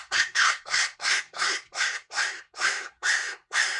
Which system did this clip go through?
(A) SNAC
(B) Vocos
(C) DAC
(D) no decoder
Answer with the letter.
A